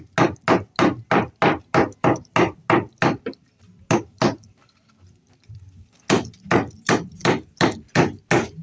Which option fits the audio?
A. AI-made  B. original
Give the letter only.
B